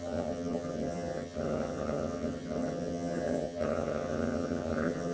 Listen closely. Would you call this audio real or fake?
fake